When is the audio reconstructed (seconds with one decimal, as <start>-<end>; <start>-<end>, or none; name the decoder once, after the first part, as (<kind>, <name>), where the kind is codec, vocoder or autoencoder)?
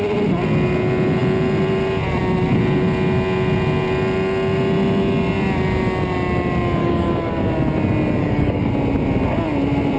6.8-7.4 (codec, DAC); 8.2-8.7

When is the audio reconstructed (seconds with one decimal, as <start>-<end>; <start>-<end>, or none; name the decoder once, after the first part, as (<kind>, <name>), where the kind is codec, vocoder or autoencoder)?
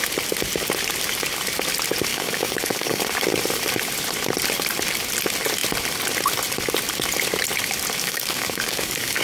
2.1-3.0 (codec, DAC); 8.0-9.2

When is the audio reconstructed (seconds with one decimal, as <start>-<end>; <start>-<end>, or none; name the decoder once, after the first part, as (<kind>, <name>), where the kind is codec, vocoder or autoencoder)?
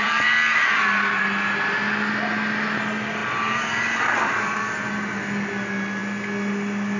none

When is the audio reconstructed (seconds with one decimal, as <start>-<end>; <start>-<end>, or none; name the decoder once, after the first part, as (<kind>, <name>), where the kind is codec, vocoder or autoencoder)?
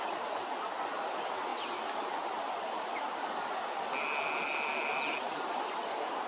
none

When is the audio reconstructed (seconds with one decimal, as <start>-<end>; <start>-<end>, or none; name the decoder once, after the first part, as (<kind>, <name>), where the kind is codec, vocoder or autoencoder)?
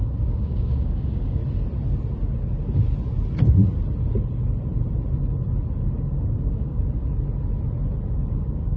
0.0-1.4 (codec, DAC); 6.1-7.0; 8.3-8.8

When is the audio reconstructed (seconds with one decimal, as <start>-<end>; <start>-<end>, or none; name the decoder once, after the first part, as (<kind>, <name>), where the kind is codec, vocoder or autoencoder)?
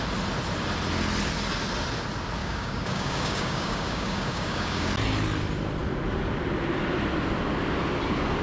2.4-4.9 (codec, DAC)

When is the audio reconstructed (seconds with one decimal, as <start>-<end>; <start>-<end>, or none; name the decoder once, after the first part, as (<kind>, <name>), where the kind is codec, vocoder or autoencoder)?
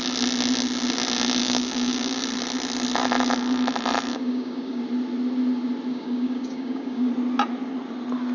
1.4-2.2 (codec, DAC); 4.1-4.8; 5.9-7.1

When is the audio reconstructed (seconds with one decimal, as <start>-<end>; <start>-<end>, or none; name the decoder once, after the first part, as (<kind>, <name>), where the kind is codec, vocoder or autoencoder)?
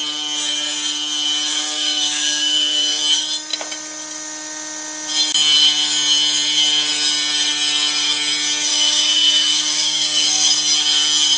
1.5-3.0 (codec, DAC); 8.7-10.5